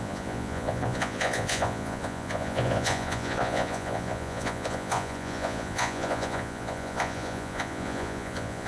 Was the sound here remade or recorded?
remade